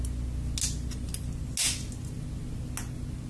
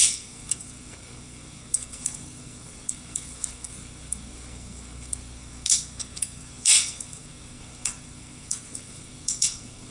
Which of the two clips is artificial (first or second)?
second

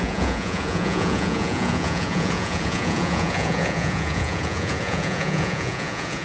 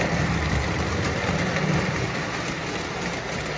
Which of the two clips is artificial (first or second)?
first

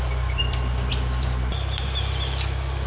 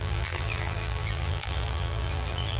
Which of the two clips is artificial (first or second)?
second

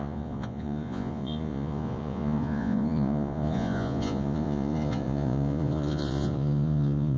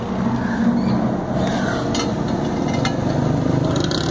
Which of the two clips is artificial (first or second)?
first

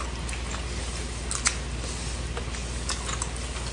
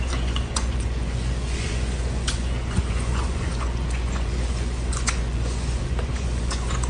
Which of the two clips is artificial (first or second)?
second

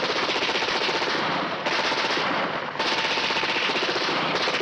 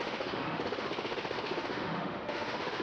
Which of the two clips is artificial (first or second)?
second